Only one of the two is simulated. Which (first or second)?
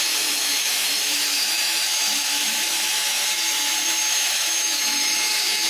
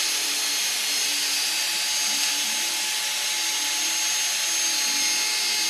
first